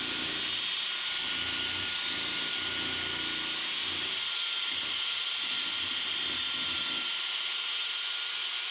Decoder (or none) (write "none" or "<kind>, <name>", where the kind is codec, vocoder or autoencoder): none